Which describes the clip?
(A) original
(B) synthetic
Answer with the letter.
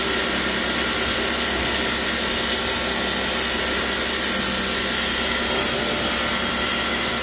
A